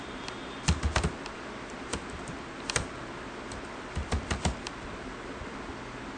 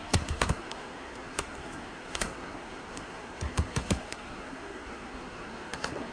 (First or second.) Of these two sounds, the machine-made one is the second